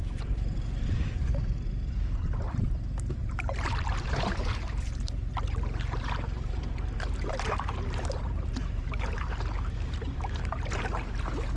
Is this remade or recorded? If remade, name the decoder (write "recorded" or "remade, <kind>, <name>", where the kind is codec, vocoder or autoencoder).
remade, vocoder, BigVGAN v2